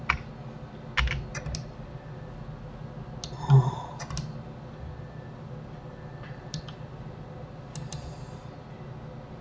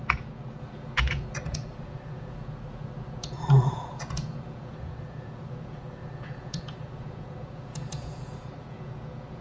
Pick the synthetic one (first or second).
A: second